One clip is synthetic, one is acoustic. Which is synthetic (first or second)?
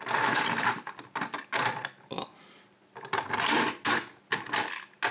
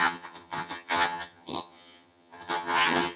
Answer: second